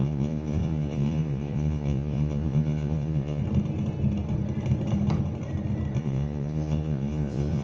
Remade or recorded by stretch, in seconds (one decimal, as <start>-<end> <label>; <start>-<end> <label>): 0.0-3.4 remade; 3.4-6.0 recorded; 6.0-7.6 remade